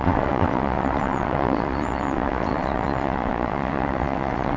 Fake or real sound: fake